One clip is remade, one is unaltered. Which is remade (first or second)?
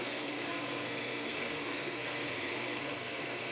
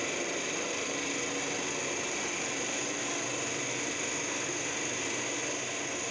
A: first